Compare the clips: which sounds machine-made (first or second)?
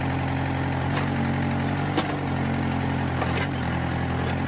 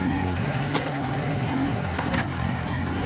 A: second